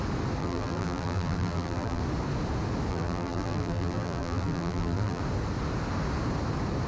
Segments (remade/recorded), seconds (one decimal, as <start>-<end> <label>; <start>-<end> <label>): 0.0-0.4 recorded; 0.4-2.0 remade; 2.0-2.9 recorded; 2.9-5.2 remade; 5.2-6.9 recorded